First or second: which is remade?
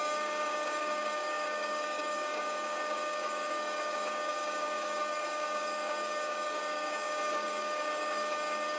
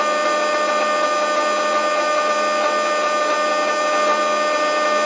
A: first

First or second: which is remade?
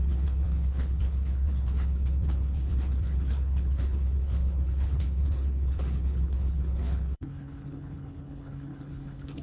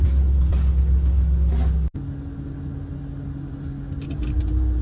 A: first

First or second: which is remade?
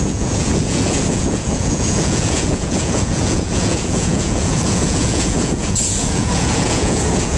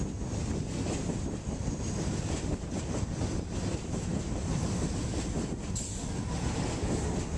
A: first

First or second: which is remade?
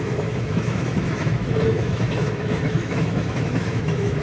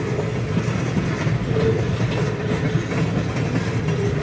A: first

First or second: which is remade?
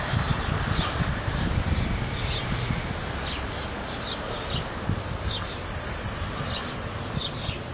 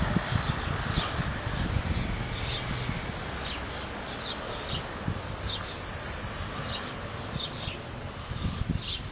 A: first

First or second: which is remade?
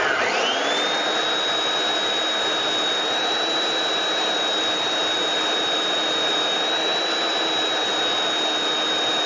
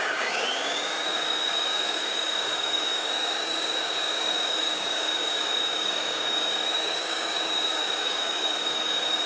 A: second